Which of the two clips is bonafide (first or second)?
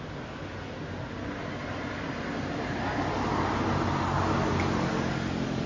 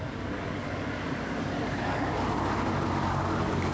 first